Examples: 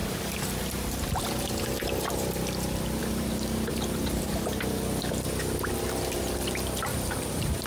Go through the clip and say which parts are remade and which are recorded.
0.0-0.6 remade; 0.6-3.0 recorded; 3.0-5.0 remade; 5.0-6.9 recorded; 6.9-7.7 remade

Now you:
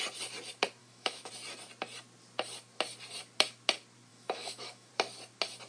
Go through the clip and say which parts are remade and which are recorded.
0.0-0.8 recorded; 0.8-1.3 remade; 1.3-4.1 recorded; 4.1-4.9 remade; 4.9-5.7 recorded

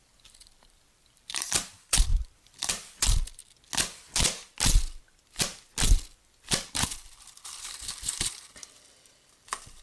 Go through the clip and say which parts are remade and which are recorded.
0.0-3.4 remade; 3.4-6.1 recorded; 6.1-9.8 remade